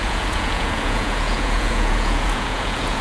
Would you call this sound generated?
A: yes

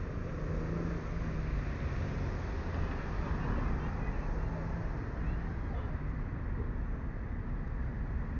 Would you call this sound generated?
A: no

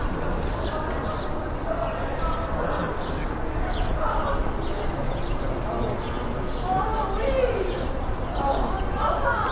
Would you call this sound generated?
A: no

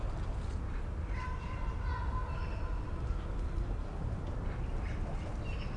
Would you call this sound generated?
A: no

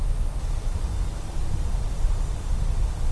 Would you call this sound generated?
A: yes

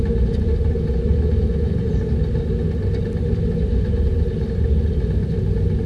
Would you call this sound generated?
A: no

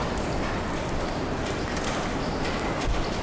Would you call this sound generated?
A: no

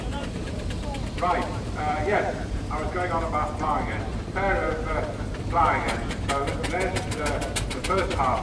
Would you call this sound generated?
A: yes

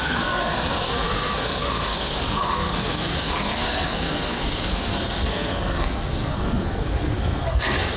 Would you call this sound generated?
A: yes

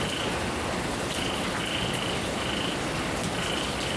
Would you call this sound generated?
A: no